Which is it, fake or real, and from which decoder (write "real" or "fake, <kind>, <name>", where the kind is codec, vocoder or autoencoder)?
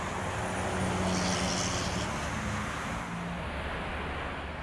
real